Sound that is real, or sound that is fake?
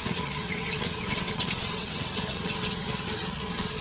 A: fake